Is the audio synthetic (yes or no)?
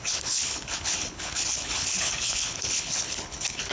yes